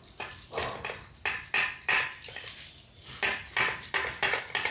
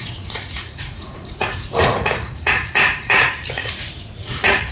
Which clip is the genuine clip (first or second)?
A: first